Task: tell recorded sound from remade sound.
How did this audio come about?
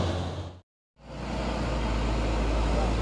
recorded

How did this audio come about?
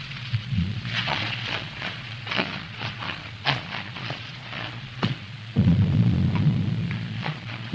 remade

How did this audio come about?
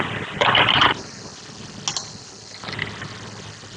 recorded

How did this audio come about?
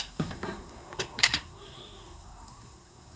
remade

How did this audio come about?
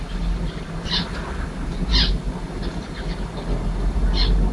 recorded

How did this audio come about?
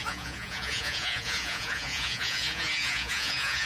remade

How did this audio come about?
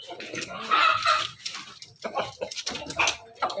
recorded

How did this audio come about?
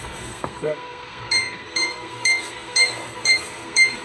remade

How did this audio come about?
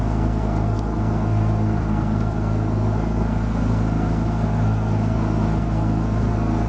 remade